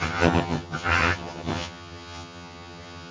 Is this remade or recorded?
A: remade